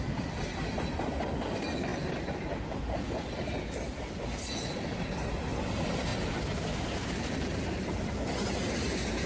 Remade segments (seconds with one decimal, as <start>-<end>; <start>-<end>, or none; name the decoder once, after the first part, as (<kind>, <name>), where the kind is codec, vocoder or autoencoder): none